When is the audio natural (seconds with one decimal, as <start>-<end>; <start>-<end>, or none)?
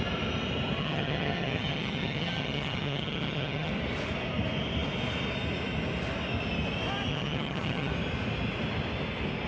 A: 0.0-0.8; 3.7-7.1; 7.9-9.5